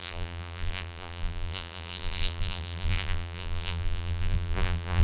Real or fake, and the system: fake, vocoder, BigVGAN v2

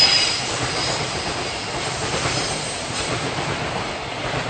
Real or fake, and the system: fake, vocoder, BigVGAN v2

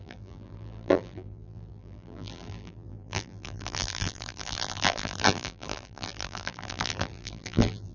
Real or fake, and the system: fake, vocoder, BigVGAN v2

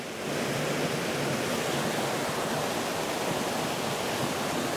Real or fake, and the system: real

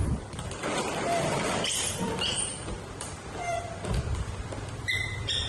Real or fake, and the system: fake, vocoder, BigVGAN v2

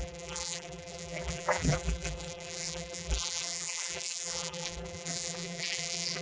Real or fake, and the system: fake, vocoder, BigVGAN v2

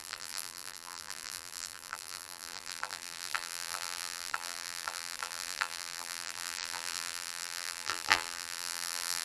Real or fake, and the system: fake, vocoder, BigVGAN v2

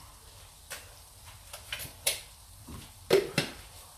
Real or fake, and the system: fake, vocoder, BigVGAN v2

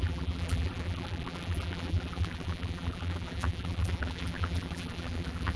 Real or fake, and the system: fake, vocoder, BigVGAN v2